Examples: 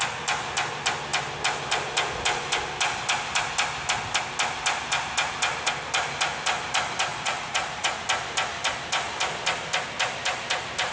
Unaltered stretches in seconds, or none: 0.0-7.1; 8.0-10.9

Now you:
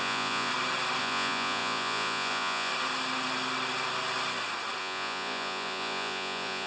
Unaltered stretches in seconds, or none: 0.5-1.0; 2.7-4.8